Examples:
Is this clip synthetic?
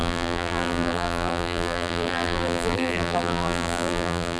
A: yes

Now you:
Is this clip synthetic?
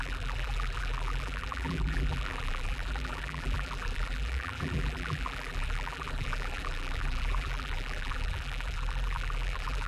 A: yes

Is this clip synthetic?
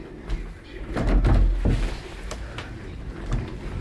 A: no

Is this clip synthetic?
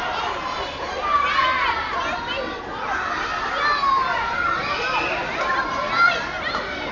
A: no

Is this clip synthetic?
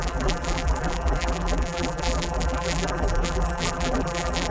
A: yes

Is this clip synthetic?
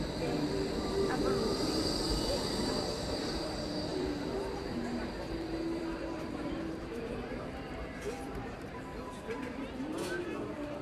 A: yes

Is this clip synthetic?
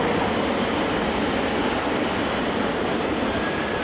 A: no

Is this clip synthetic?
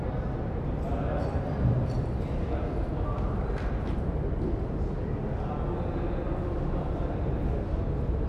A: no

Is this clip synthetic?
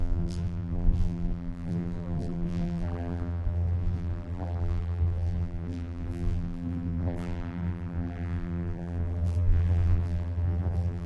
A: yes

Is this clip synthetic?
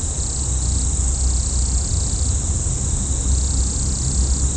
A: no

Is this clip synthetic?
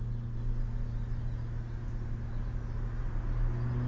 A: no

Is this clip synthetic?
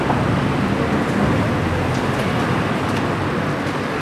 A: no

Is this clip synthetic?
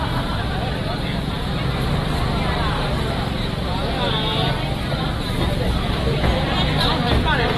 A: no